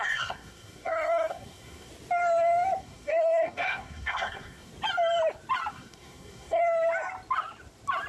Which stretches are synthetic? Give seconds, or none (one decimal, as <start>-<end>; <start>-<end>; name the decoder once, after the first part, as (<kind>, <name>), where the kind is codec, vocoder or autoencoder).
0.0-1.9 (codec, SNAC); 2.8-4.7; 5.7-6.6